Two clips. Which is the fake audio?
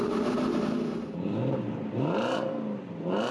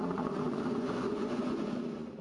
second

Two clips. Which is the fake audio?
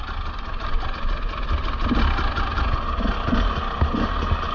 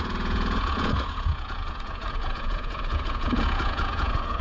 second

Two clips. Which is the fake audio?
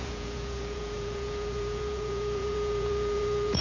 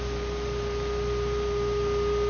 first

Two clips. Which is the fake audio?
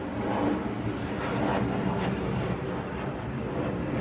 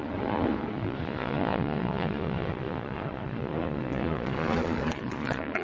second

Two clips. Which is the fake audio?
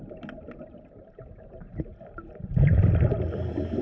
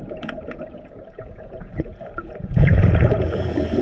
second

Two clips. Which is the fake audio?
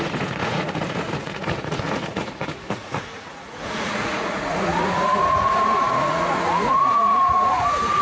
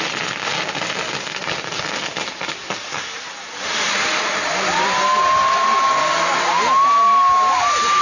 first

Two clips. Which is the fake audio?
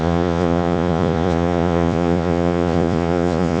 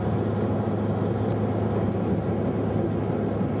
first